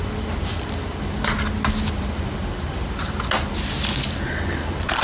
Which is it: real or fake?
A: real